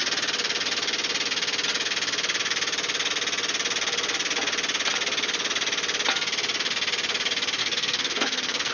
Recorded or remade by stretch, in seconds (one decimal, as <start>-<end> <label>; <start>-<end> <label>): 0.0-7.6 recorded; 7.6-8.7 remade